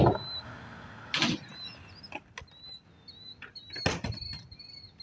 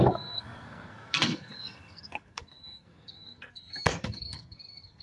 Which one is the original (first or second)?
first